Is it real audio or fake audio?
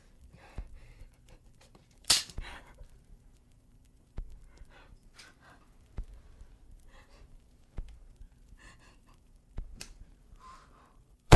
fake